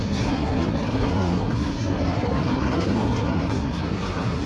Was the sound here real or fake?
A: fake